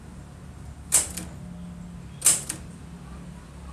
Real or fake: real